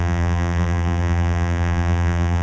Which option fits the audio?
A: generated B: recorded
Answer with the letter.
A